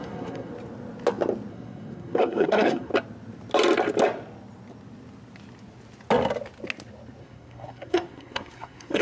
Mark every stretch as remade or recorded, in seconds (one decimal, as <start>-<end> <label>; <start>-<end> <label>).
0.0-0.5 remade; 0.5-1.5 recorded; 1.5-2.9 remade; 2.9-7.2 recorded; 7.2-9.0 remade